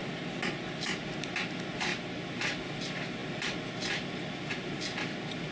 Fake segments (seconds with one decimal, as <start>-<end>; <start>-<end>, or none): none